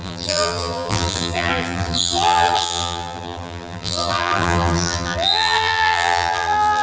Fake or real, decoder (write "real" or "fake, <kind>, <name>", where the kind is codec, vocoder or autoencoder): fake, vocoder, BigVGAN v2